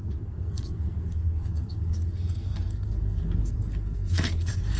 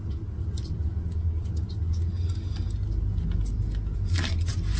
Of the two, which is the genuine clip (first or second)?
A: second